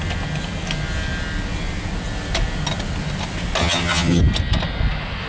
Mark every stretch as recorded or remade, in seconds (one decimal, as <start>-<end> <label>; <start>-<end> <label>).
0.0-3.6 recorded; 3.6-4.2 remade; 4.2-5.3 recorded